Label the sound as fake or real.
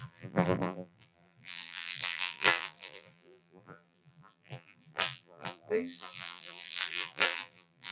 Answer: fake